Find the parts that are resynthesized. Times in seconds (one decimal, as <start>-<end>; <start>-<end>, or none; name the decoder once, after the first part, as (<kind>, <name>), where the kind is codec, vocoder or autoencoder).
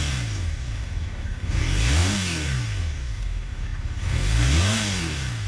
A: 0.0-5.5 (codec, DAC)